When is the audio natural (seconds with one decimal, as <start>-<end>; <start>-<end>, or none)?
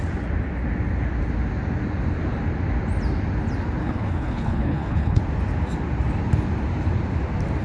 0.0-3.8; 5.2-7.6